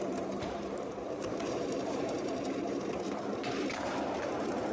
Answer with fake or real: fake